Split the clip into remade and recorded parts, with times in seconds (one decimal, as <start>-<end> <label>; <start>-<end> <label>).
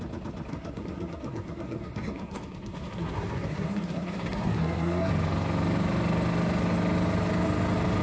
0.0-0.5 recorded; 0.5-5.1 remade; 5.1-8.0 recorded